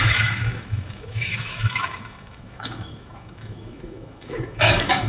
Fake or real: fake